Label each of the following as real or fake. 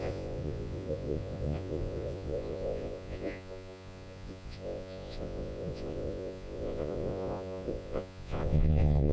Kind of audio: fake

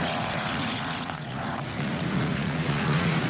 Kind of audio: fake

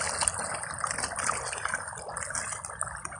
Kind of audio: real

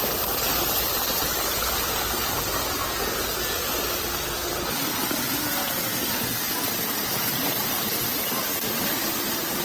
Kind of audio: real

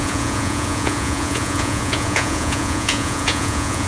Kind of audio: fake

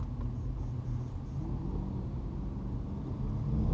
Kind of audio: real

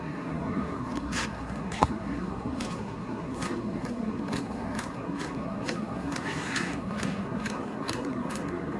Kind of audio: fake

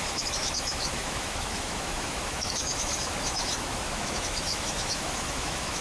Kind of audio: fake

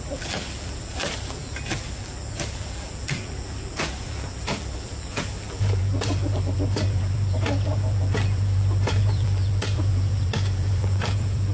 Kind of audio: fake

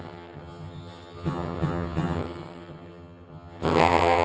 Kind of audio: fake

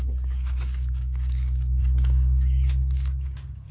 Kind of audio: fake